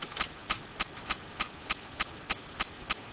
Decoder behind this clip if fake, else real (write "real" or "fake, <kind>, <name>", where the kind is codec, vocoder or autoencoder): real